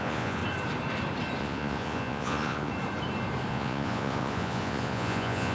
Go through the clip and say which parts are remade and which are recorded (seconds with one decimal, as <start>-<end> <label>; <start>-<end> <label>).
0.0-0.4 remade; 0.4-1.4 recorded; 1.4-2.7 remade; 2.7-3.5 recorded; 3.5-5.5 remade